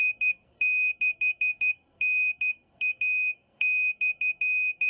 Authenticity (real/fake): fake